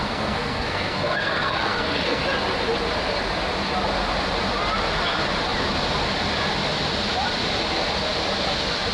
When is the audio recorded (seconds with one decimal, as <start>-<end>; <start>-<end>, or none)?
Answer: 2.2-8.9